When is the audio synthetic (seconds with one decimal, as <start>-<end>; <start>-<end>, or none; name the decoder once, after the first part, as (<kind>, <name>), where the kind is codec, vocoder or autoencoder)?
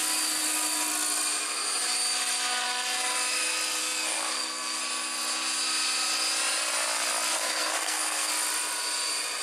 3.8-4.8 (codec, SNAC); 7.3-8.3